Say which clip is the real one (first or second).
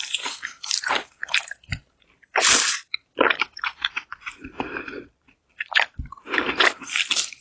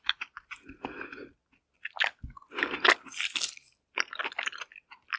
second